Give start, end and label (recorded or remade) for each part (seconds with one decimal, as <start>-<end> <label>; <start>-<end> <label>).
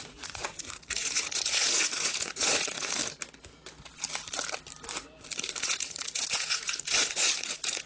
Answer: 0.0-3.0 remade; 3.0-5.6 recorded; 5.6-7.9 remade